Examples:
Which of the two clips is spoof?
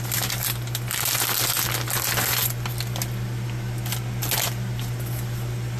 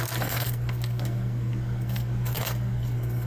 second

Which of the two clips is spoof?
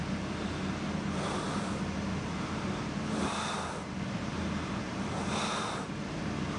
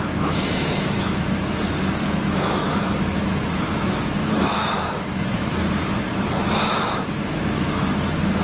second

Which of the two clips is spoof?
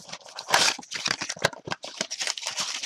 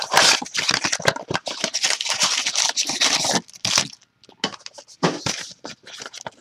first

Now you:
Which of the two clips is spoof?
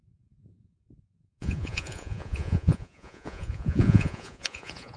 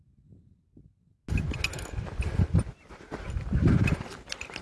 first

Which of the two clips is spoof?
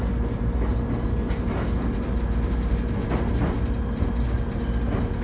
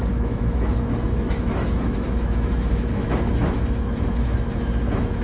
second